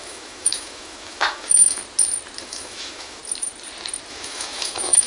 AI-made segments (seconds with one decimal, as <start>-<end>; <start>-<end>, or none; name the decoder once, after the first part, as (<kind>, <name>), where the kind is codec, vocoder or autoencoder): 0.0-1.8 (autoencoder, DAC-VAE); 2.4-3.2; 4.1-5.1

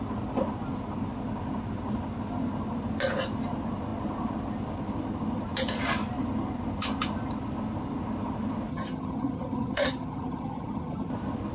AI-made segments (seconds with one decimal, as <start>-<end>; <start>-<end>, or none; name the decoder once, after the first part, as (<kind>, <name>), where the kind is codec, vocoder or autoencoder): 8.7-11.1 (vocoder, HiFi-GAN)

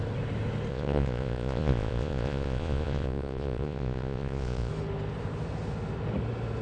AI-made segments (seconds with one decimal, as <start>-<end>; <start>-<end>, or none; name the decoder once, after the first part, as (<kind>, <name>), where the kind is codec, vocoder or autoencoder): 0.7-4.7 (vocoder, Vocos)

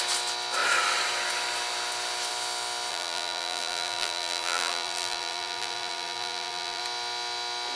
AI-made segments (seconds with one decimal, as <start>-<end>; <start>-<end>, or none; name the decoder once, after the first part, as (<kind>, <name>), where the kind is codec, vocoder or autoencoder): 2.9-6.8 (vocoder, BigVGAN v2)